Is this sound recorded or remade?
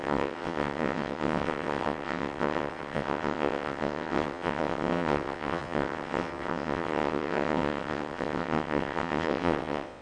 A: remade